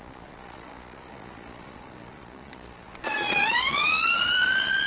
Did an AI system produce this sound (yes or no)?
yes